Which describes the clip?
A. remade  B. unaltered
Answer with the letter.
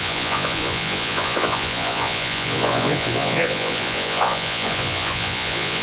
A